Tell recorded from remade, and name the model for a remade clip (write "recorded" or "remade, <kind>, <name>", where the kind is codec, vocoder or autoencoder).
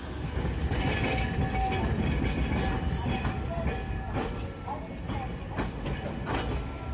recorded